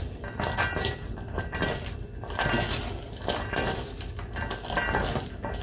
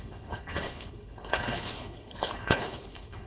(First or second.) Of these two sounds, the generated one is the second